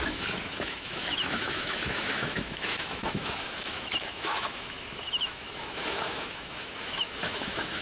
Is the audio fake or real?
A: fake